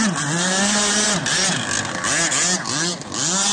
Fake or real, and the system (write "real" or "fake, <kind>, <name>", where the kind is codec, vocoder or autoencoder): real